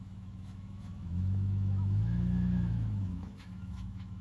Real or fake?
fake